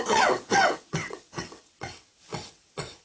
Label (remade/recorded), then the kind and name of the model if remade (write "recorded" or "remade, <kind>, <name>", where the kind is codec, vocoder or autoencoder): remade, vocoder, WaveNeXt